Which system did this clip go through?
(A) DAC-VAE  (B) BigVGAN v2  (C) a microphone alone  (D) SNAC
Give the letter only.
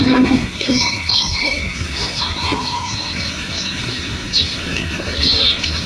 D